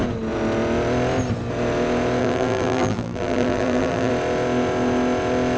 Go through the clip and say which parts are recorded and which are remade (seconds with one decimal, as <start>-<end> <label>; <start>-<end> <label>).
0.0-2.2 recorded; 2.2-4.1 remade; 4.1-5.6 recorded